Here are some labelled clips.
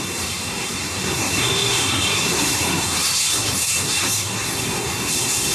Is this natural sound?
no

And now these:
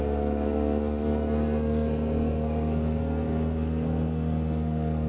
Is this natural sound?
no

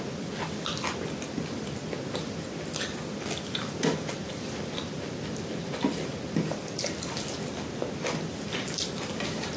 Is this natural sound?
yes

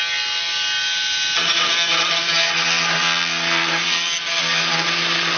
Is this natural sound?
yes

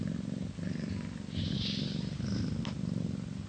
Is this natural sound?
yes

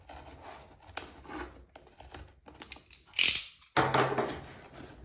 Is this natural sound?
yes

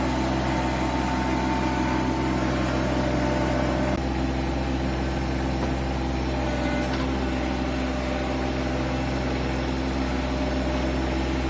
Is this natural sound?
yes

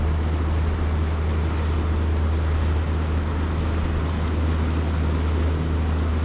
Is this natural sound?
yes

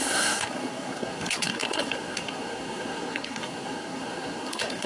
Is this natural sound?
no